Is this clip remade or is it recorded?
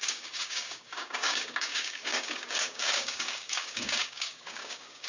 remade